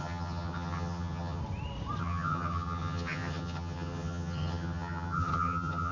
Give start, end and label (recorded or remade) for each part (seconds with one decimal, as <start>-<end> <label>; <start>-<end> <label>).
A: 0.0-1.4 remade; 1.4-2.0 recorded; 2.0-5.9 remade